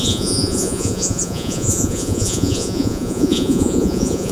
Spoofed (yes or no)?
yes